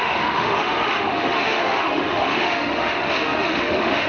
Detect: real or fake fake